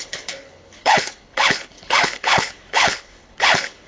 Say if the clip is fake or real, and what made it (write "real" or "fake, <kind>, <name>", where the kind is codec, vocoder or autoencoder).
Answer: fake, codec, HILCodec